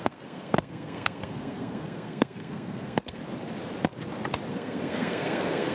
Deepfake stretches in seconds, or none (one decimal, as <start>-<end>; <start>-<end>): 0.0-3.2; 4.5-5.7